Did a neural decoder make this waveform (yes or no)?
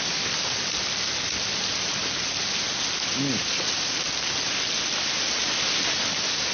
no